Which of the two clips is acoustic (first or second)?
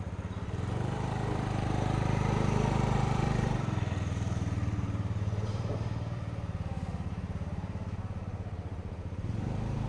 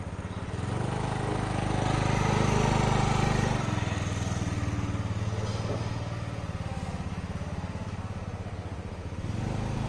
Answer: second